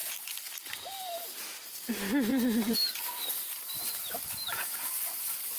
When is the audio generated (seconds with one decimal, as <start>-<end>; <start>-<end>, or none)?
2.3-3.8